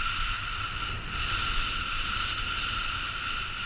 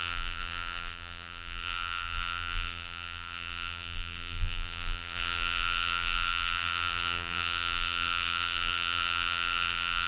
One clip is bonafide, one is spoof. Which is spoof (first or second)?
second